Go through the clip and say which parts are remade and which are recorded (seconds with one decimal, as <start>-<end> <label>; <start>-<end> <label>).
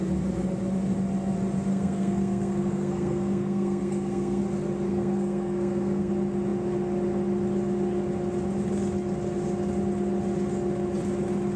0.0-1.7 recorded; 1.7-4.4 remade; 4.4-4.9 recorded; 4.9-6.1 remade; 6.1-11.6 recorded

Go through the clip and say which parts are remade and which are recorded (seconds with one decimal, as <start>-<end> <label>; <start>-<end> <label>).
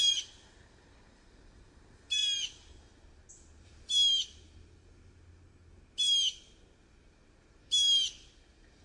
0.0-8.8 recorded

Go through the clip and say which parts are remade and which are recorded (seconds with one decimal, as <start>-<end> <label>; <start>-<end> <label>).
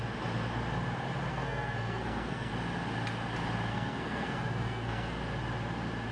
0.0-1.3 recorded; 1.3-2.5 remade; 2.5-3.7 recorded; 3.7-5.2 remade; 5.2-6.1 recorded